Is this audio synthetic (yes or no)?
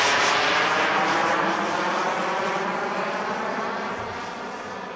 no